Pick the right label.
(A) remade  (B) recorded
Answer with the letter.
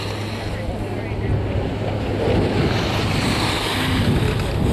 B